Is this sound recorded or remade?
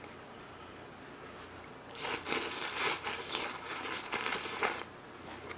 recorded